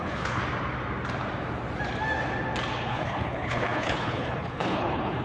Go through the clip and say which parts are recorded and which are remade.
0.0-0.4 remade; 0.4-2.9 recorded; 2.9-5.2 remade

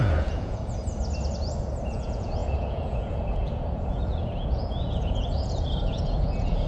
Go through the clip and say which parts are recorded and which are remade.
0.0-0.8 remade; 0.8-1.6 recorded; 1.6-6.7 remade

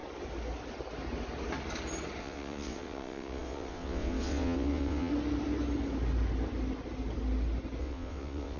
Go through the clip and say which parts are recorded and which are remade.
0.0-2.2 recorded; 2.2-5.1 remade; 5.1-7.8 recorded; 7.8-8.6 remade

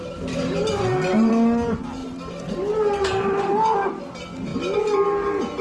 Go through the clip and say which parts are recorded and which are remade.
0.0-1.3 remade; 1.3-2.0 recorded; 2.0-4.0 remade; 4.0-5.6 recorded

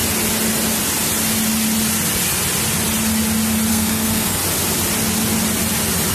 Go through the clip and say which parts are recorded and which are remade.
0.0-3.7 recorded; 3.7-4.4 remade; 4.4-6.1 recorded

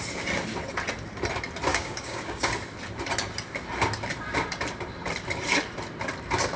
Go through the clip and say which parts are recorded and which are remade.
0.0-1.7 recorded; 1.7-2.5 remade; 2.5-6.6 recorded